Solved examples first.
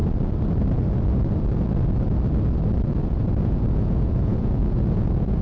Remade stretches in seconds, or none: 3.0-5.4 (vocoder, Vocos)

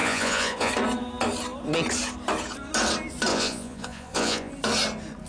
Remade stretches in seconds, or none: 0.0-0.7 (vocoder, Vocos); 3.3-4.5

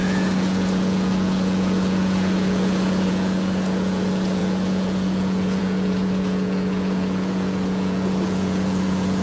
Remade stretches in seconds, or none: 0.0-9.2 (vocoder, Vocos)

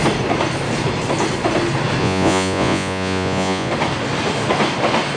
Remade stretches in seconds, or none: 2.0-3.7 (vocoder, Vocos)